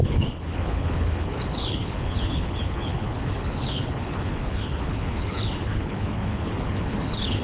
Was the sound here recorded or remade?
remade